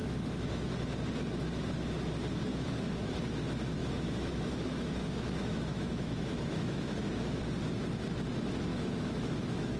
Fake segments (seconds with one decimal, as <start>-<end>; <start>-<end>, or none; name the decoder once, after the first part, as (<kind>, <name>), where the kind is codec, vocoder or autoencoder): 0.0-0.7 (autoencoder, DAC-VAE); 2.5-3.1; 3.8-7.4; 8.7-9.8